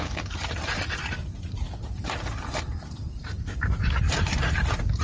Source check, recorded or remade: remade